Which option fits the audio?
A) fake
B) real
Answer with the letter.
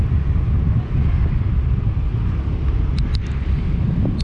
B